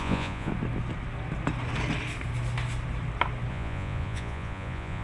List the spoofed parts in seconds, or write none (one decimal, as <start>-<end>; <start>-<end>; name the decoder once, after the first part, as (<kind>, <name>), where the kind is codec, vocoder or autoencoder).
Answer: 0.0-0.5 (vocoder, Vocos); 3.5-5.0